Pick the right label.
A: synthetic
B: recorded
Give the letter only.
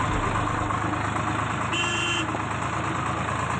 B